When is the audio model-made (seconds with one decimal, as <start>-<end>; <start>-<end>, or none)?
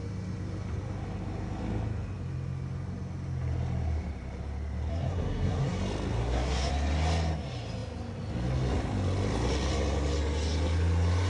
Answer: 4.9-5.8; 6.2-6.7